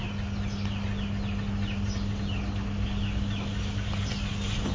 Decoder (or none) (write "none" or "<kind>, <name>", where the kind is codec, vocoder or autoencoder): none